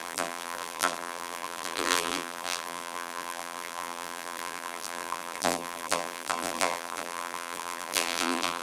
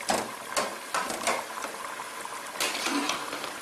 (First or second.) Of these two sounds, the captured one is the second